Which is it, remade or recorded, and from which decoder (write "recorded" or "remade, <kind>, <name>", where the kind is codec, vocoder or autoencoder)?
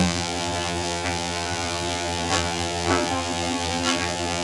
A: remade, vocoder, BigVGAN v2